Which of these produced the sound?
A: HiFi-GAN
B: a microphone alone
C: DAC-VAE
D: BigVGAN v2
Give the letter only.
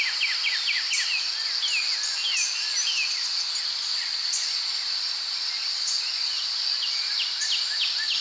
B